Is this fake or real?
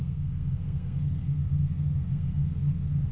fake